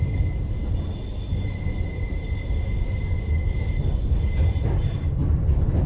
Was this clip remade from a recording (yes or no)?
no